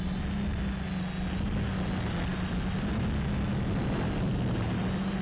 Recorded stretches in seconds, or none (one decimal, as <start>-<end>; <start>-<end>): 0.0-5.2